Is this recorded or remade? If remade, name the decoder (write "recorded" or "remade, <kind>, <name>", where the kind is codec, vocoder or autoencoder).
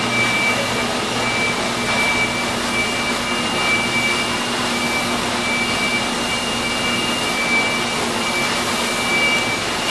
recorded